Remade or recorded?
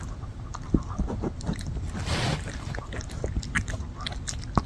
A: recorded